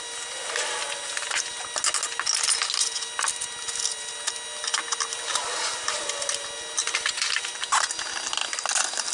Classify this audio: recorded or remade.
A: recorded